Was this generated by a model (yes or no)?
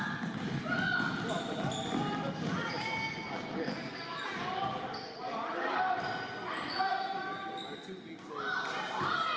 no